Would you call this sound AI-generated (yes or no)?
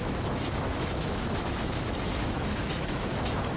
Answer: yes